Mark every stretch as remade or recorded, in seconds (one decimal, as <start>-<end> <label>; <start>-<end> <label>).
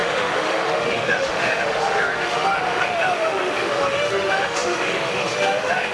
0.0-5.9 remade